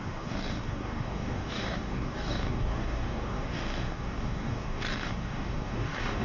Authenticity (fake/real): fake